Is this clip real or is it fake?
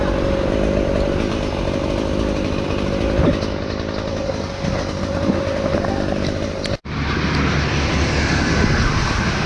real